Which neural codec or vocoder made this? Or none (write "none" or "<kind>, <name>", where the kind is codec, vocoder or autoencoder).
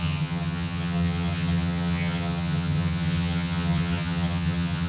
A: vocoder, HiFi-GAN